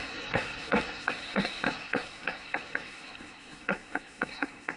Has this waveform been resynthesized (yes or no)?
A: yes